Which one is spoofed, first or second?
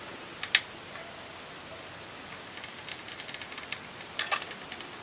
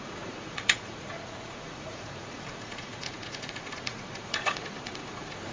second